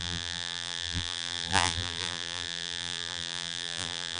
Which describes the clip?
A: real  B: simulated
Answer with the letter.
B